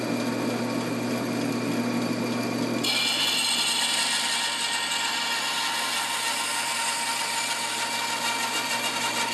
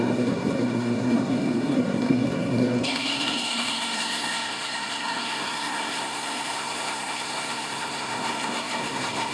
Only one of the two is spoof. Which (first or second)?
second